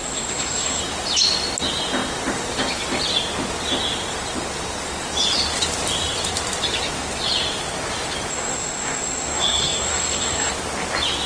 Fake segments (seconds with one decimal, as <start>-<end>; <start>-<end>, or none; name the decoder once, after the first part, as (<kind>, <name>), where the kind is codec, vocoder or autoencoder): 0.0-0.8 (codec, SNAC); 8.3-10.5